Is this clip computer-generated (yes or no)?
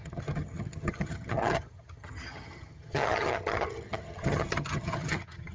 yes